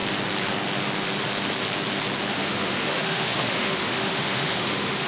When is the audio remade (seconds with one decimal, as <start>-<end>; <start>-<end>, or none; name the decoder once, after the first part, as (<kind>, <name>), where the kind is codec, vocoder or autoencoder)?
2.3-5.1 (autoencoder, DAC-VAE)

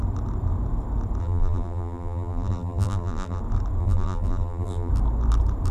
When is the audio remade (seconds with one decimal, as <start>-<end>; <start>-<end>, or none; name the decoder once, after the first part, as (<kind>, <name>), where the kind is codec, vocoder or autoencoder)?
1.2-3.4 (vocoder, BigVGAN v2); 3.8-4.9

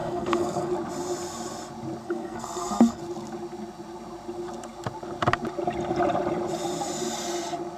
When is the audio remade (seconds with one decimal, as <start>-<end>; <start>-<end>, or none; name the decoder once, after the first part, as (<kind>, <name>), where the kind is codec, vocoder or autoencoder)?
0.0-0.7 (codec, SNAC); 2.0-3.0

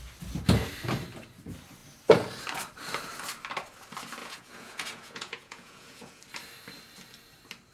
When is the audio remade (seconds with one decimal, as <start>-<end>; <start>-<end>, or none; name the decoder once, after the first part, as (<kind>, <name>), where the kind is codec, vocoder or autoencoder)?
4.2-6.2 (vocoder, Vocos)

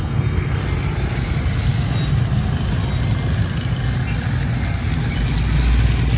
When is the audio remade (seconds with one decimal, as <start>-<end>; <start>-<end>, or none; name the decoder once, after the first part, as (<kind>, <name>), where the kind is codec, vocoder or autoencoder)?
0.0-0.6 (codec, SNAC)

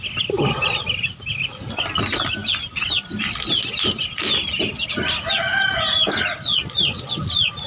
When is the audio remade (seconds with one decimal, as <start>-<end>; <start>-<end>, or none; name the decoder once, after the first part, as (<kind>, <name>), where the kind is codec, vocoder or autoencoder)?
5.5-6.1 (vocoder, Vocos)